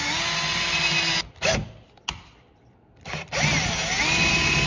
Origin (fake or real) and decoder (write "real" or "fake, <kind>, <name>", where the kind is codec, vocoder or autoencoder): real